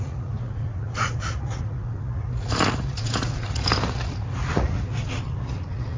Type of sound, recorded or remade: remade